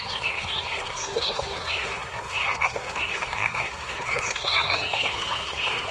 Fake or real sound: fake